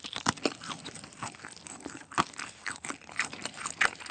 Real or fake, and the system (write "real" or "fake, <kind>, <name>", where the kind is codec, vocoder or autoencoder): real